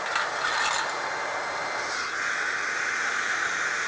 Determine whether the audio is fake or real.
real